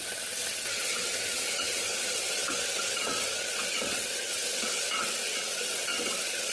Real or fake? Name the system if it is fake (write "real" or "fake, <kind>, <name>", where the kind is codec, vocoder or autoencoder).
fake, vocoder, WaveNeXt